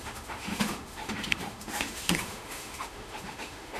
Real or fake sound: fake